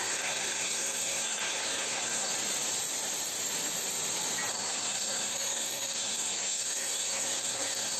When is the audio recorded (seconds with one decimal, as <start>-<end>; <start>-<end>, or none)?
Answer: 2.3-4.5